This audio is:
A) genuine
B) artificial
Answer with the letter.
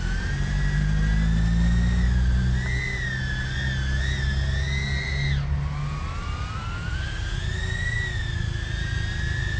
A